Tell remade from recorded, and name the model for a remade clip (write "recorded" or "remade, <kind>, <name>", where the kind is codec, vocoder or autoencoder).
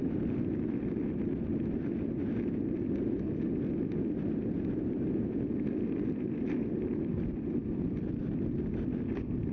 recorded